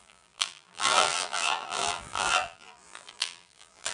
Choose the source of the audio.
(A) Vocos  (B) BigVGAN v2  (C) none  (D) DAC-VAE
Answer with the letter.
B